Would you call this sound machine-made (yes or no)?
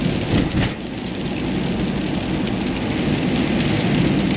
no